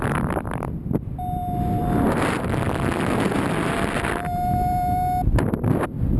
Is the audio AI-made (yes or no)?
no